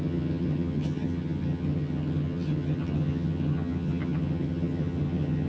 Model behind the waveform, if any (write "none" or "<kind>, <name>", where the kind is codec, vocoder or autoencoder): vocoder, HiFi-GAN